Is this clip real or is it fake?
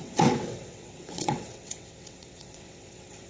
fake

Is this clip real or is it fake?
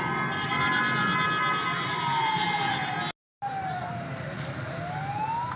real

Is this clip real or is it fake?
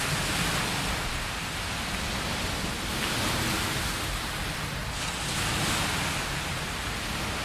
real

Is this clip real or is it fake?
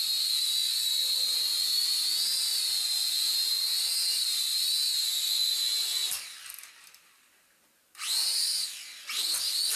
real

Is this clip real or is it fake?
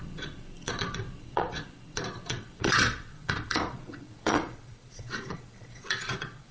fake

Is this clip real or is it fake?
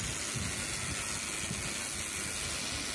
real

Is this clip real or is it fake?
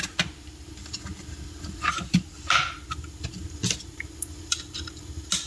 real